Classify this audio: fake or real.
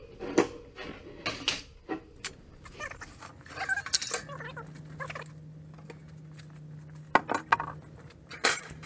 real